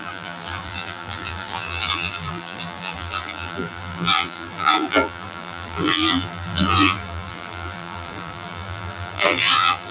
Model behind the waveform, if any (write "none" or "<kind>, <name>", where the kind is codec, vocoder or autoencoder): vocoder, BigVGAN v2